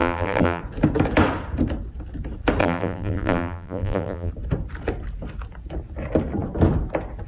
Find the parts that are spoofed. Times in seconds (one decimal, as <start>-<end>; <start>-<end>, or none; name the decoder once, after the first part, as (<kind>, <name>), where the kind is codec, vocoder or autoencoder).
0.0-0.6 (vocoder, BigVGAN v2); 2.6-4.3